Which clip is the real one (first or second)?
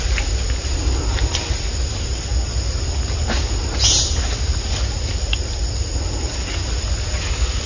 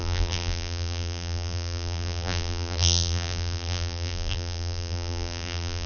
first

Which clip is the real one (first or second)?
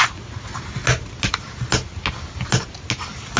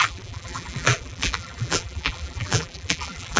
first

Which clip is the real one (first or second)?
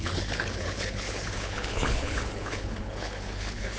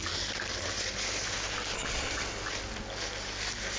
second